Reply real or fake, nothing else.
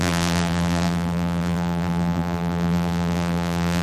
fake